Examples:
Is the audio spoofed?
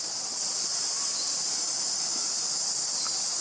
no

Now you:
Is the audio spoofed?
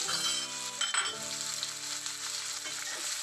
no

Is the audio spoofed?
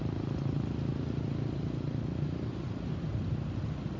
no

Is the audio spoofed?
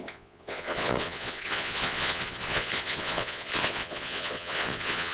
yes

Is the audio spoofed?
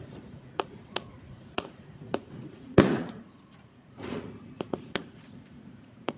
yes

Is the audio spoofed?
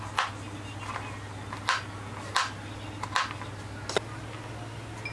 no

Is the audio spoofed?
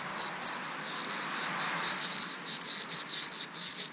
no